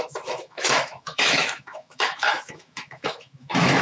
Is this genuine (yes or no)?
no